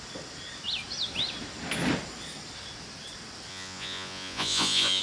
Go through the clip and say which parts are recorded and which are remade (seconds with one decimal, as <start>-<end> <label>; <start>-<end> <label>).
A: 0.0-3.5 recorded; 3.5-5.0 remade